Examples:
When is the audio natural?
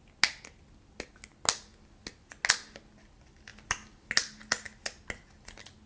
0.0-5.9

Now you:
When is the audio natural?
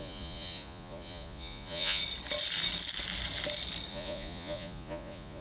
2.0-3.9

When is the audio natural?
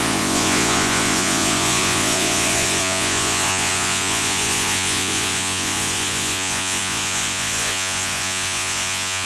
none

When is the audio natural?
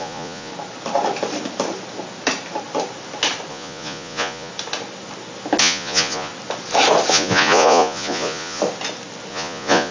0.5-3.5; 4.5-5.6; 6.3-7.1; 8.6-9.3